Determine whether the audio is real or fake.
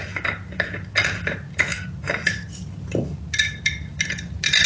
real